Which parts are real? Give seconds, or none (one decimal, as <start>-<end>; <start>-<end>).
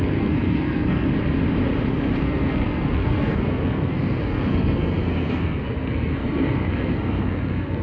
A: 1.1-2.2